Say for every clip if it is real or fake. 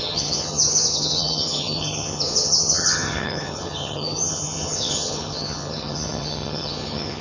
fake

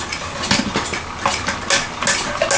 real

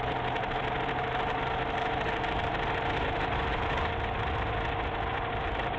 real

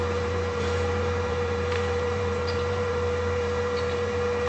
fake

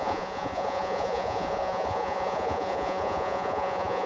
fake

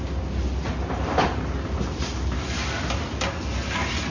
real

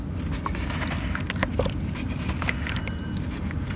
real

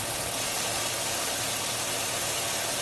real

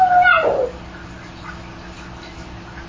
real